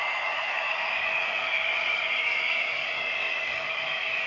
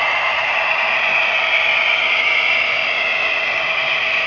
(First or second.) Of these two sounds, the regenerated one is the first